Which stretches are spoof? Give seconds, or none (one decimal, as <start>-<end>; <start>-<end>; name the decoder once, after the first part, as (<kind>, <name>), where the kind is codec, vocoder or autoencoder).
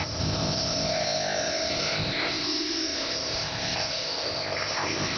0.0-5.2 (codec, ZipCodec)